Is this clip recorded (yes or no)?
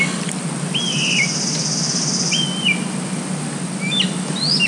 yes